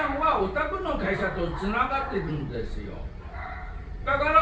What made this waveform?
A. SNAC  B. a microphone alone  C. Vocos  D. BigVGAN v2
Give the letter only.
D